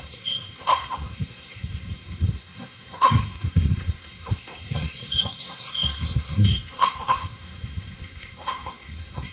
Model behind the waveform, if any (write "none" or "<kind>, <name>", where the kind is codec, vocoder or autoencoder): codec, SNAC